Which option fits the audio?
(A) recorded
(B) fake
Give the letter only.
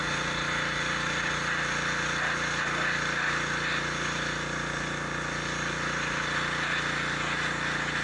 A